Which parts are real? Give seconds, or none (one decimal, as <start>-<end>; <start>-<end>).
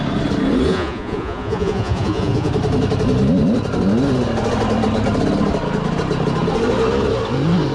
0.0-0.7; 2.5-7.7